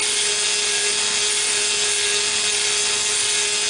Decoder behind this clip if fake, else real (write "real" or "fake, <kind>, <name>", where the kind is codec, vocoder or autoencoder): real